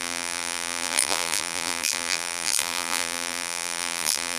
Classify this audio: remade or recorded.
remade